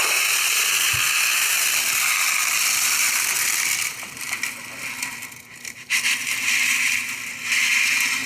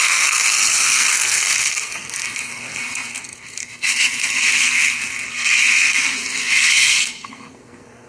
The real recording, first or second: first